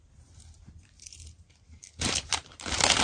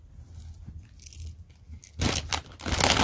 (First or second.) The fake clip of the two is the first